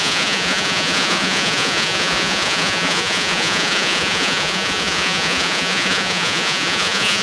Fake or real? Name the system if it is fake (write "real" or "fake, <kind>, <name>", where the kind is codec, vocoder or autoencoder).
fake, vocoder, Vocos